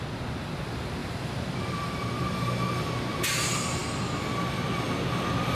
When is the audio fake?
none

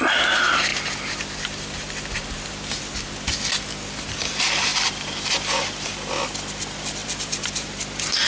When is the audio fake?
4.7-6.1 (vocoder, BigVGAN v2); 7.0-7.7